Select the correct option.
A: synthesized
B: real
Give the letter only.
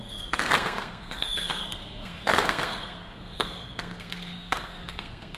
A